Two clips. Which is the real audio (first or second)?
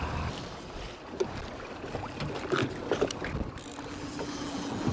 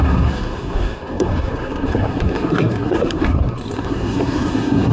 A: first